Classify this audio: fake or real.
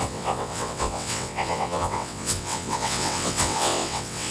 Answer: fake